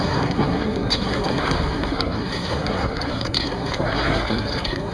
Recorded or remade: remade